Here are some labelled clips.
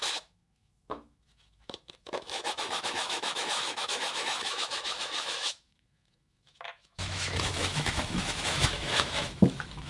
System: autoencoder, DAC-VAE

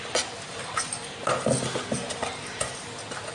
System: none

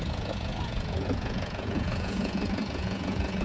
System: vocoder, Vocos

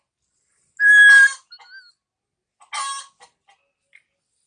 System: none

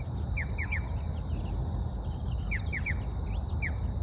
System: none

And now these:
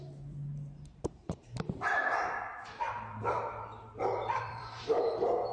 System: vocoder, BigVGAN v2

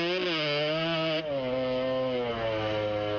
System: none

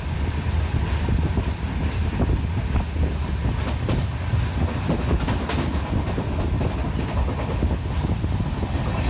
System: none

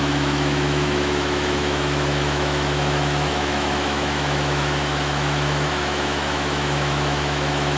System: autoencoder, DAC-VAE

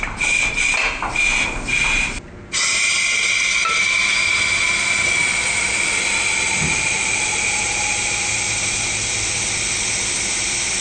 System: none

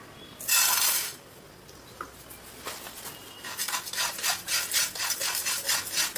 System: none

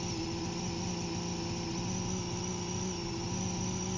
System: none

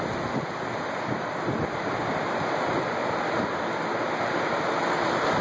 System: none